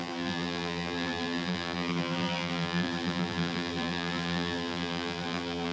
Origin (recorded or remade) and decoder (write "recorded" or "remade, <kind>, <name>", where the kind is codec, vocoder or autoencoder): remade, vocoder, BigVGAN v2